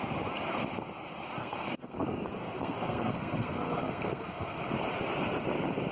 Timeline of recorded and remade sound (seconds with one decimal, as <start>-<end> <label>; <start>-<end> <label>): 0.0-1.4 recorded; 1.4-4.7 remade; 4.7-5.9 recorded